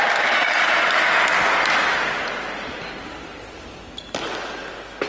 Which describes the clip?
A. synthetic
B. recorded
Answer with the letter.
B